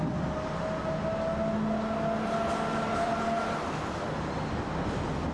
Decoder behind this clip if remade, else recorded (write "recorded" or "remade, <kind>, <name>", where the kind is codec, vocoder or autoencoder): recorded